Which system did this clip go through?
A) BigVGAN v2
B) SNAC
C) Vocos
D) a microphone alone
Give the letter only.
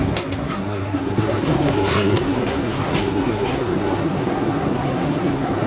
B